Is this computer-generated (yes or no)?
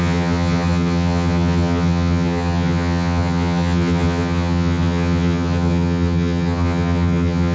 yes